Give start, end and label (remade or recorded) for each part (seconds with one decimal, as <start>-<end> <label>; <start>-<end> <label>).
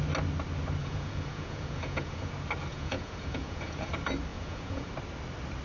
0.0-0.8 recorded; 0.8-2.3 remade; 2.3-2.7 recorded; 2.7-3.9 remade; 3.9-4.3 recorded; 4.3-4.9 remade; 4.9-5.6 recorded